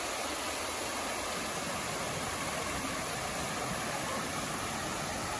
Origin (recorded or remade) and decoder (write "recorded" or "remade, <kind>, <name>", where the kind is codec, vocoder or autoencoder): recorded